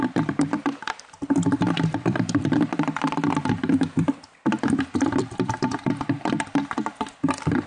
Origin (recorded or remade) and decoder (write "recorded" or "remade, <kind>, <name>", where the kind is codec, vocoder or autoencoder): remade, vocoder, BigVGAN v2